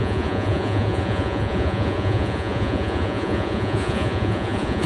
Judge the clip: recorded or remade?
remade